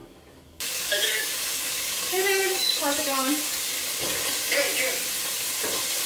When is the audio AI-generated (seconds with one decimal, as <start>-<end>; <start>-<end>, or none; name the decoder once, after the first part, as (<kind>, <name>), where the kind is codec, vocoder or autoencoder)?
0.0-3.7 (codec, DAC)